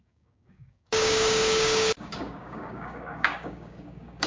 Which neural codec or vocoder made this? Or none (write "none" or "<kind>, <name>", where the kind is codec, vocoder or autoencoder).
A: codec, DAC